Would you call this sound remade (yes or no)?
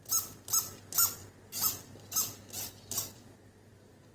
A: no